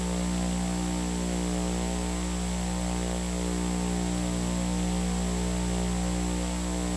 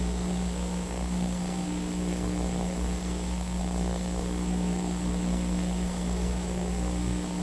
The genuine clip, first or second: first